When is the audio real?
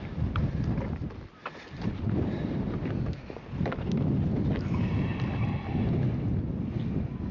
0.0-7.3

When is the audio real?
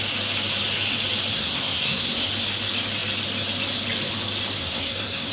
0.0-1.3; 2.3-4.6